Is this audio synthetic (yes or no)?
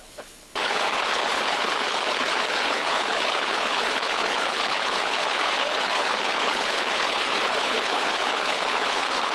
yes